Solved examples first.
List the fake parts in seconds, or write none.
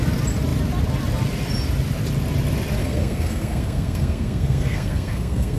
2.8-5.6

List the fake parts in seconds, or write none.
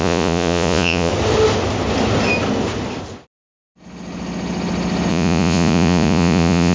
0.0-1.1; 5.1-6.7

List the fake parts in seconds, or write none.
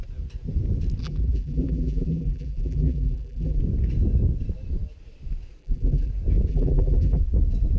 1.0-3.6; 5.6-6.1; 6.5-7.2